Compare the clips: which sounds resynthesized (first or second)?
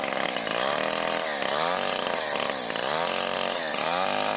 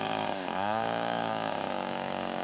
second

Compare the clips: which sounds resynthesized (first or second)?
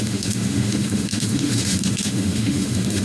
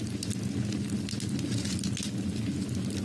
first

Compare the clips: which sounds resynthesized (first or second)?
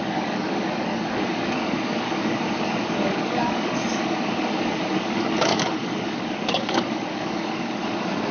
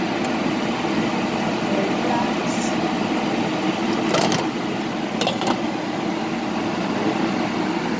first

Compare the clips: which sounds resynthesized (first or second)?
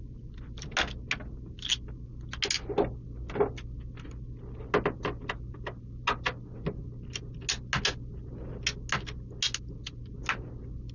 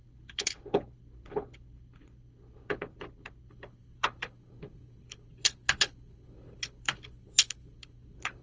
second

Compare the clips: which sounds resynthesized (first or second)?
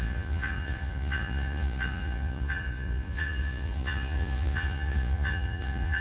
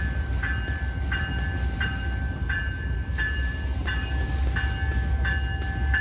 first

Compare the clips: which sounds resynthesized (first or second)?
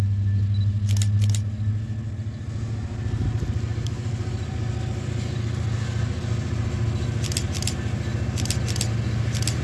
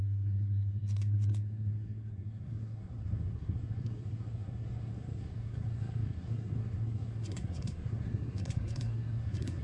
second